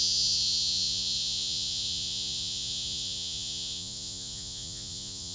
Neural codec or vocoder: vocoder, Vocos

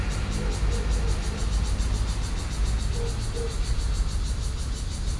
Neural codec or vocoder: none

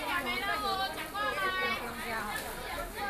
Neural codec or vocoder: none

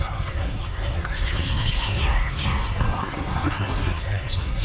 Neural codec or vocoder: codec, SNAC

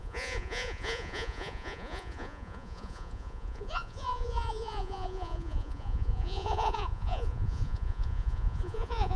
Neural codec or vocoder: vocoder, Vocos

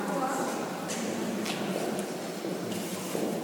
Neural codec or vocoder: none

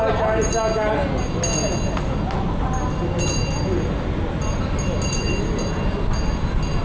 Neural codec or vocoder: none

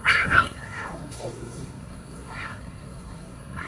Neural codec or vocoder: codec, SNAC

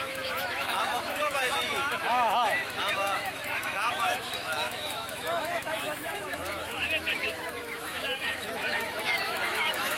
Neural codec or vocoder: autoencoder, DAC-VAE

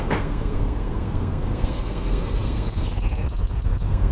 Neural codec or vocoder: codec, SNAC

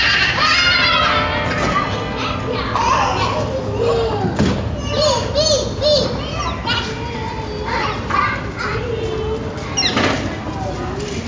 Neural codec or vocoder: none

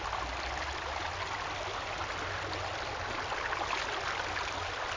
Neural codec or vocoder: none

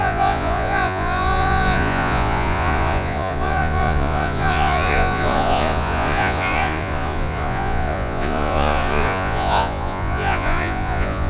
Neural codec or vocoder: vocoder, Vocos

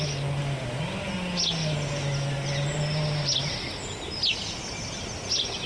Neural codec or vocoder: none